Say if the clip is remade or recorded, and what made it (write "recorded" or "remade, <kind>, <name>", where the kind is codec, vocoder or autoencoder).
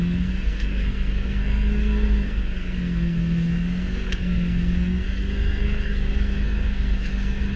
remade, codec, SNAC